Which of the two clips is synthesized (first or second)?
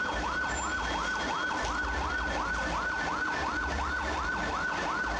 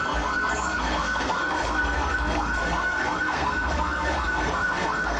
second